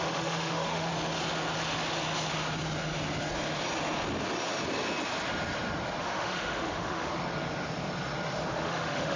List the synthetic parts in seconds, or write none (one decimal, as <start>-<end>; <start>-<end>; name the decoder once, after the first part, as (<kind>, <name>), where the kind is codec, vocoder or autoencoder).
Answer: 0.0-0.9 (autoencoder, DAC-VAE); 6.0-7.1; 8.5-9.2